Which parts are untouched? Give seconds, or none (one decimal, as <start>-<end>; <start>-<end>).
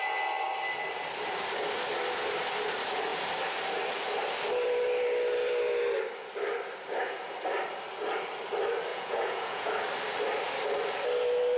0.0-8.9; 9.7-11.6